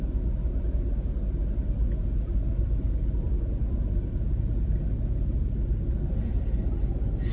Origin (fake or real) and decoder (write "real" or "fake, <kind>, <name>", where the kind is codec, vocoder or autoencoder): real